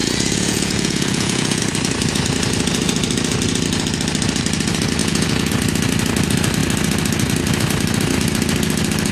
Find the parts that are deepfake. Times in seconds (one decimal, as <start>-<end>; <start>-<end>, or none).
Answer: 0.0-1.6; 5.0-5.5